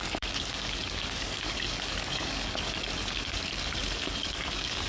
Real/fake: fake